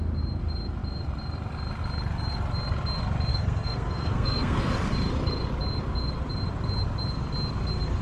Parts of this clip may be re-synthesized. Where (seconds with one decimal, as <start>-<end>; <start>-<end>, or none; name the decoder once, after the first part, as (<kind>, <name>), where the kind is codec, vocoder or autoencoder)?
3.3-4.7 (codec, SNAC)